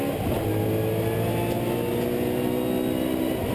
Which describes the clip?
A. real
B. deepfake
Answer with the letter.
A